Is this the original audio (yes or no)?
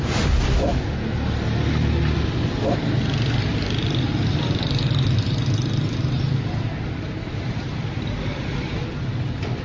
no